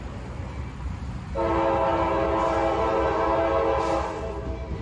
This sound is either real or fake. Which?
real